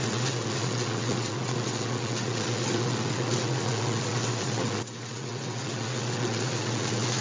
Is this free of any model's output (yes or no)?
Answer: no